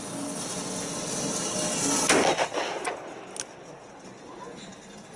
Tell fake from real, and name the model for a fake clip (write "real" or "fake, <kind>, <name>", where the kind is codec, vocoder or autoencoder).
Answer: real